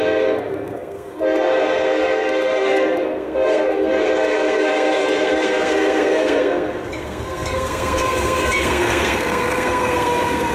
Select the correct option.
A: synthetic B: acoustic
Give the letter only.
A